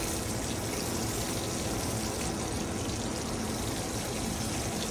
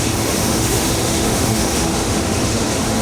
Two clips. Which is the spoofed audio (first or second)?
second